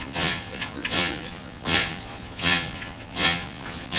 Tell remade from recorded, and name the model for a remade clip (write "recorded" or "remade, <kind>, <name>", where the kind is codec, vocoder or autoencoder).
remade, vocoder, Vocos